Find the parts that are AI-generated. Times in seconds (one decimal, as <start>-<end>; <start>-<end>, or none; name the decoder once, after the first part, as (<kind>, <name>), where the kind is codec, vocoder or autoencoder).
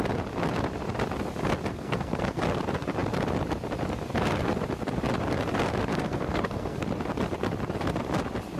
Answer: 1.7-2.4 (codec, SNAC); 5.9-6.8